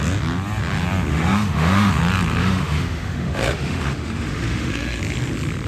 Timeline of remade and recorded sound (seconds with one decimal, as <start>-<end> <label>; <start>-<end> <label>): 0.0-1.1 recorded; 1.1-1.9 remade; 1.9-2.4 recorded; 2.4-5.0 remade; 5.0-5.7 recorded